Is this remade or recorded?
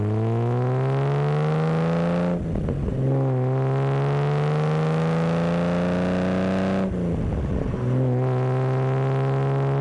recorded